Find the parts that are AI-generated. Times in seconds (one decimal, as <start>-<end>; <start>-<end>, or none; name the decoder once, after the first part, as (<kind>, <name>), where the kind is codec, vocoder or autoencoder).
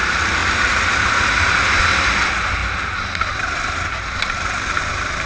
0.4-1.1 (vocoder, BigVGAN v2); 2.6-5.3